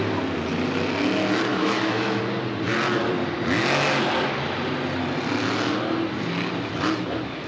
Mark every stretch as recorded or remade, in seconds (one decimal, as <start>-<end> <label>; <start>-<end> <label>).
0.0-1.5 recorded; 1.5-2.2 remade; 2.2-7.5 recorded